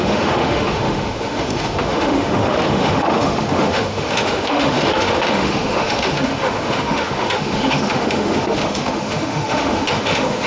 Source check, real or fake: fake